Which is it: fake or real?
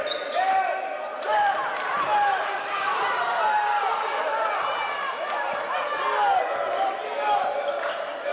real